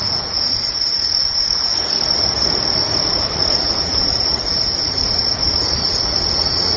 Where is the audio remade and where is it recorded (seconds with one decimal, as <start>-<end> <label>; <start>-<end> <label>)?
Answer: 0.0-1.7 remade; 1.7-3.1 recorded; 3.1-6.8 remade